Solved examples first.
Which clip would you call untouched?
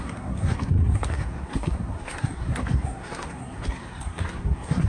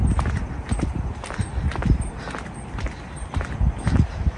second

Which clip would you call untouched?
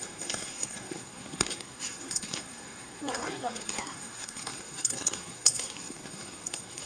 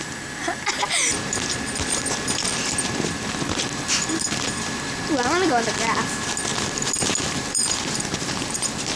second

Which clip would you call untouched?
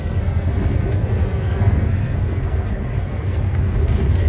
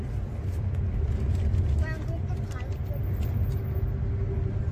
second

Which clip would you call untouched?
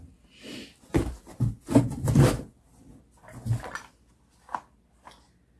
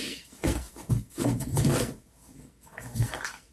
first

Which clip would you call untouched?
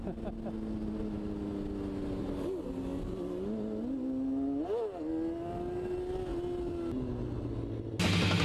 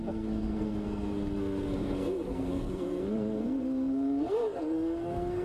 first